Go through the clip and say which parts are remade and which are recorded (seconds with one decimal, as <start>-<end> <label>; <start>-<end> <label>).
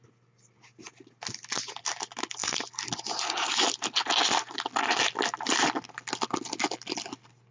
0.0-7.5 recorded